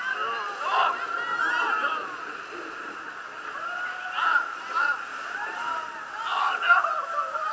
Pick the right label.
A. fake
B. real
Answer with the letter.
B